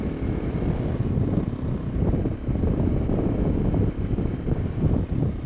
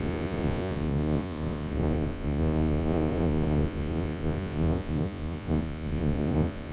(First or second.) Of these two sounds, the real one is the first